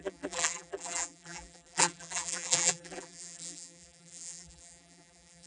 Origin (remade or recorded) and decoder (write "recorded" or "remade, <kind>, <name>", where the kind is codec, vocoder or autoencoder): remade, vocoder, BigVGAN v2